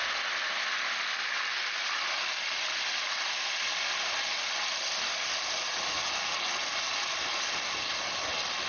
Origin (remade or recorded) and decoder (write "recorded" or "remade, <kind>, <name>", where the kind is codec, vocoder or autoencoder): recorded